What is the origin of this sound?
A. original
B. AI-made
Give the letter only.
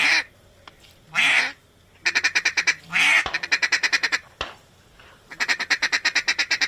A